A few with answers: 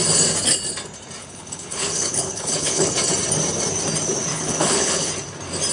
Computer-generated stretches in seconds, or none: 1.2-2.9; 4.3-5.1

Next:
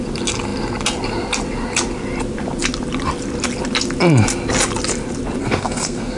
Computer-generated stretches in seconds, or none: 5.4-6.2